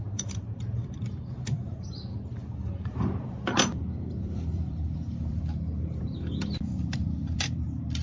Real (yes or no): no